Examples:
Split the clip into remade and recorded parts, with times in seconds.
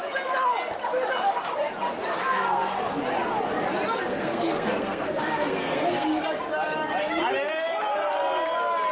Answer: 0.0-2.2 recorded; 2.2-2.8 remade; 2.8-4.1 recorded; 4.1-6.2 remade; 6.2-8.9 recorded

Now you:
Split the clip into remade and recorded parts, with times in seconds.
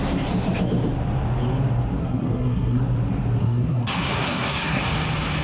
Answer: 0.0-2.0 recorded; 2.0-2.8 remade; 2.8-3.4 recorded; 3.4-4.8 remade; 4.8-5.4 recorded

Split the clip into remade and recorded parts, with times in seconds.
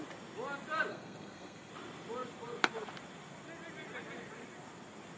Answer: 0.0-0.9 recorded; 0.9-1.7 remade; 1.7-5.2 recorded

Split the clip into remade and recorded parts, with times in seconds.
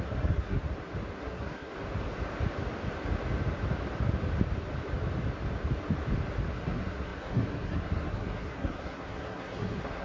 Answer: 0.0-0.6 remade; 0.6-1.2 recorded; 1.2-1.7 remade; 1.7-6.5 recorded; 6.5-10.0 remade